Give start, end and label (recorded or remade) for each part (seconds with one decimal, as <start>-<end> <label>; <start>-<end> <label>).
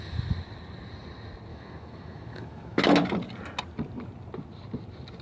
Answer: 0.0-1.5 recorded; 1.5-2.8 remade; 2.8-5.2 recorded